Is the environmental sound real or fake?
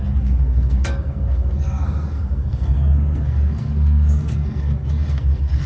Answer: fake